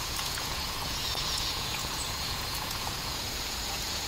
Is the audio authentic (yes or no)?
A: no